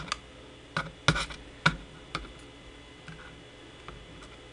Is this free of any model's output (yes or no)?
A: yes